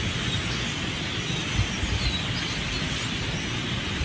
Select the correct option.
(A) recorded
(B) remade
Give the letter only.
A